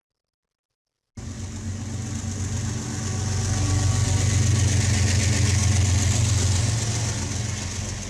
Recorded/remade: recorded